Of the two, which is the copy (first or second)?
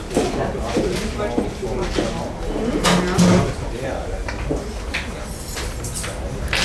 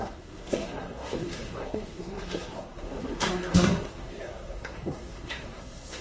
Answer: second